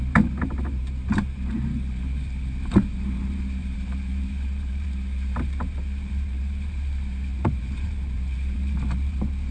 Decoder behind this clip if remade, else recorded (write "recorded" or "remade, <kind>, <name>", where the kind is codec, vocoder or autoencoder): remade, vocoder, BigVGAN v2